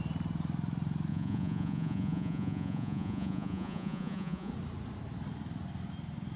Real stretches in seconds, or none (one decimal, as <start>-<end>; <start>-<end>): 0.0-1.1; 4.5-6.4